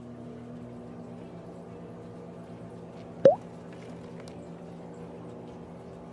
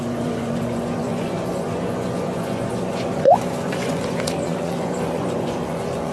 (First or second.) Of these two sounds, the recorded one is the first